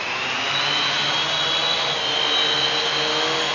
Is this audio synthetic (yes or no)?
no